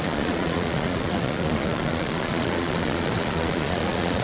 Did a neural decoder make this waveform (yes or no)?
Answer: yes